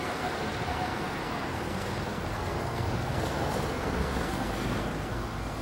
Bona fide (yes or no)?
no